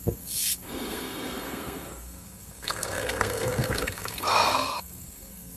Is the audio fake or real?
fake